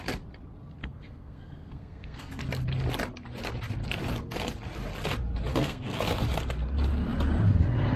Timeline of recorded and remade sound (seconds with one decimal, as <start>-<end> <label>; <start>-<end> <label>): 0.0-0.8 recorded; 0.8-2.4 remade; 2.4-5.5 recorded; 5.5-6.0 remade; 6.0-8.0 recorded